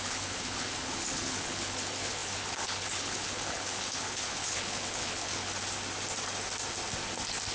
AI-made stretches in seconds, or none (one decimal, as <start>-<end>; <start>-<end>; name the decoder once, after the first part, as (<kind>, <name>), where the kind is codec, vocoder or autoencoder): 0.0-5.5 (codec, HILCodec)